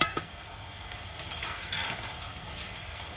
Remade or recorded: remade